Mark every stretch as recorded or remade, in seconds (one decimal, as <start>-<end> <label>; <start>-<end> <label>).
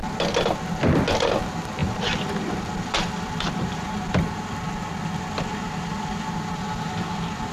0.0-1.8 recorded; 1.8-3.5 remade; 3.5-7.5 recorded